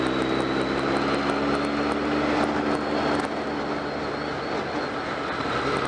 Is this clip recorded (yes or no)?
yes